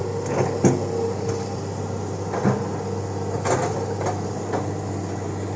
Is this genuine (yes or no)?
yes